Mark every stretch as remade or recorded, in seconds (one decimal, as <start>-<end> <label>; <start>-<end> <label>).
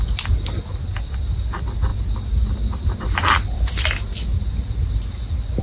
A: 0.0-5.6 recorded